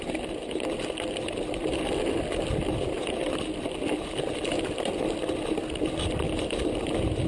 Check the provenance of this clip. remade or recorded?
recorded